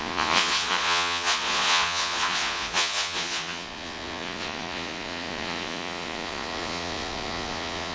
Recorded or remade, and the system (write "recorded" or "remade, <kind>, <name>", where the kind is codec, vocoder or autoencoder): remade, vocoder, Vocos